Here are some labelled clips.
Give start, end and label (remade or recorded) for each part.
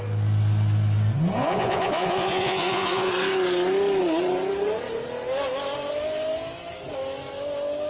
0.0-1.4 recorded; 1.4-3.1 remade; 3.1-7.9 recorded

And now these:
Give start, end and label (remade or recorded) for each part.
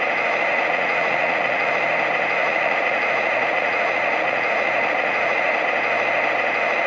0.0-0.5 recorded; 0.5-1.7 remade; 1.7-2.4 recorded; 2.4-5.6 remade; 5.6-6.9 recorded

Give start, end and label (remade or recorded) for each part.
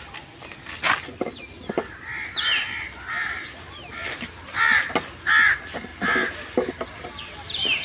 0.0-7.8 recorded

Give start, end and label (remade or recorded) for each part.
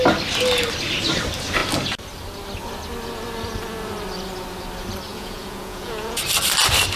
0.0-5.1 recorded; 5.1-6.2 remade; 6.2-7.0 recorded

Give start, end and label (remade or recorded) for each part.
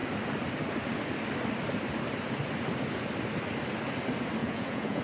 0.0-4.4 recorded; 4.4-5.0 remade